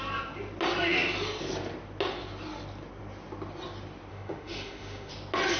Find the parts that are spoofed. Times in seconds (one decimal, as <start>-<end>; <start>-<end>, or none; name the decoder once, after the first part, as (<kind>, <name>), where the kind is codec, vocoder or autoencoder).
4.1-5.1 (autoencoder, DAC-VAE)